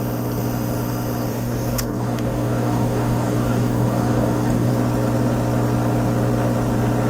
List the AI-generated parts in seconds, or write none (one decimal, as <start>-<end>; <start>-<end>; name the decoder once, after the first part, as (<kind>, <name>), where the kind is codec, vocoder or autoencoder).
1.3-4.7 (codec, DAC)